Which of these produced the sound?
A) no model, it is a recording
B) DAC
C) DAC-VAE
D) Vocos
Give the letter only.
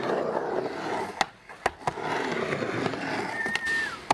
A